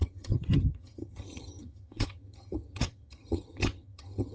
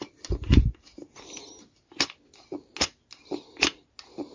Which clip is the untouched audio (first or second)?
second